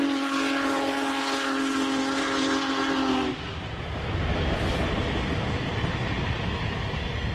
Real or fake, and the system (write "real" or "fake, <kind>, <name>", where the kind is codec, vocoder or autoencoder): real